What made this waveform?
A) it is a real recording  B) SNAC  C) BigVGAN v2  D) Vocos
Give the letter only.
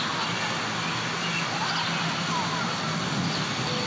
A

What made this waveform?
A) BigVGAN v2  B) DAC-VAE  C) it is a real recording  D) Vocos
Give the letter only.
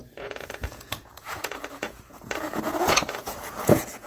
D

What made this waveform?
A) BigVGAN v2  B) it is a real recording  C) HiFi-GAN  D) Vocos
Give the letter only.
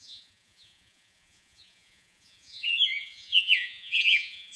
D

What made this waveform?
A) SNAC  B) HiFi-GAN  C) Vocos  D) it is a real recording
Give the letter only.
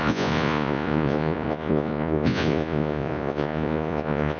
C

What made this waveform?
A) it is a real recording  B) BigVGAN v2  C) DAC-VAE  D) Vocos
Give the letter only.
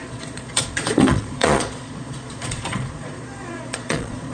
D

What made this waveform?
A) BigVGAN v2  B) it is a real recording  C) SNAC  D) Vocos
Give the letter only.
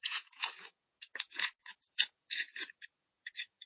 D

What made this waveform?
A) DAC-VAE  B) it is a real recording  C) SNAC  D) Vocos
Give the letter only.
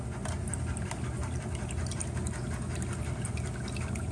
B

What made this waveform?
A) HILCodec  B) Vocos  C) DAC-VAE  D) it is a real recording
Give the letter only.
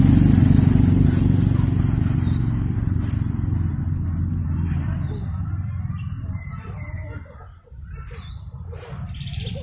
D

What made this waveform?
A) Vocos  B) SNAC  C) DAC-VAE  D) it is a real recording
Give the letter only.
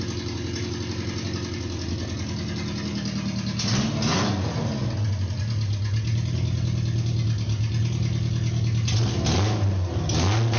D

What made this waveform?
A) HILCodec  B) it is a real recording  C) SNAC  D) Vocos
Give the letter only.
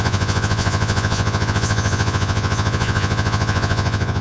D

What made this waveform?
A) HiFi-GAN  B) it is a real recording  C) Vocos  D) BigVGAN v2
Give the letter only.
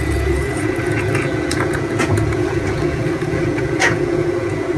C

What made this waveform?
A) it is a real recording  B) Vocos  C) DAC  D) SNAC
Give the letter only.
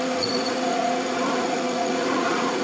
B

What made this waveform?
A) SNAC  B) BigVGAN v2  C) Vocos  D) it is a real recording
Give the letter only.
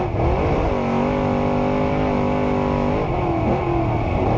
D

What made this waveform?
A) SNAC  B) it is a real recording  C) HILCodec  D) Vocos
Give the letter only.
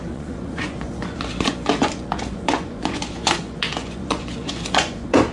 D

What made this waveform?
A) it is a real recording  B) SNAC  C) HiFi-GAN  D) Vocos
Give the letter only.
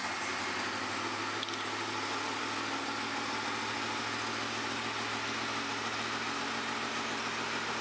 A